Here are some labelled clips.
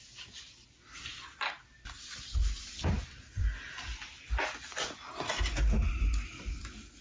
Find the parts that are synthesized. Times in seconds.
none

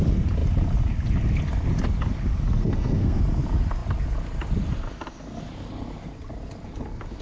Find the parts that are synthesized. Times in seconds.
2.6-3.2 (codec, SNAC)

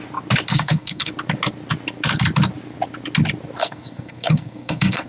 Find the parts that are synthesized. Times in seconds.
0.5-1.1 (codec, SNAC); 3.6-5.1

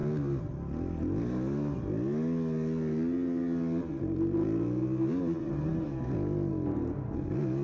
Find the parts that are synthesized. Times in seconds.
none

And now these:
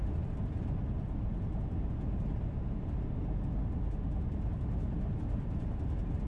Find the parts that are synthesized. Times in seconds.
none

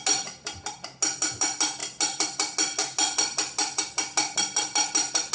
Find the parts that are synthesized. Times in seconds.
none

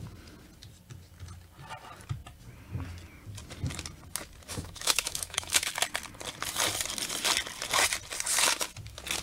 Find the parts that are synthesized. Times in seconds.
4.5-5.7 (autoencoder, DAC-VAE)